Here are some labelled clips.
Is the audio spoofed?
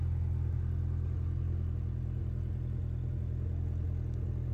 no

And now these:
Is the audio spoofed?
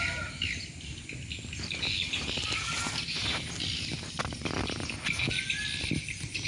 no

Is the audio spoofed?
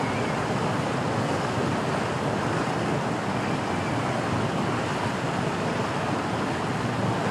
no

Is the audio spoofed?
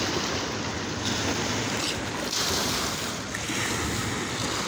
no